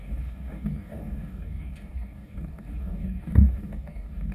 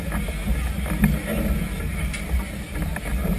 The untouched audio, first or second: second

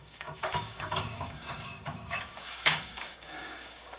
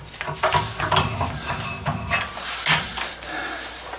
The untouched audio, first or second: second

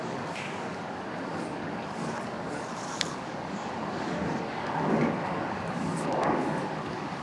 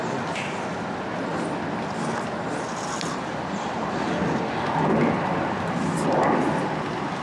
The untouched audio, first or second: second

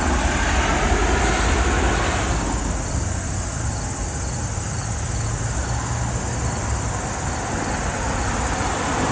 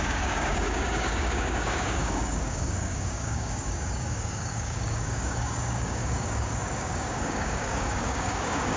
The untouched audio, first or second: first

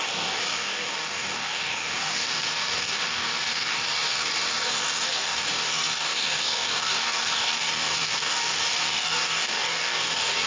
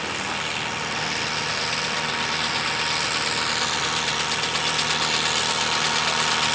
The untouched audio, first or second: second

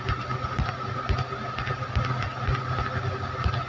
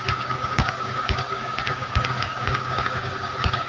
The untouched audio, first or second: first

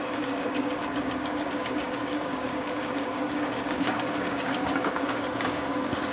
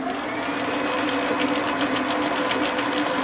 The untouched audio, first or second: second